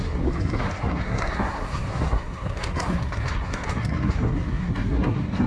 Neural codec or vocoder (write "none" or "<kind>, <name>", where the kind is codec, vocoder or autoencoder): codec, SNAC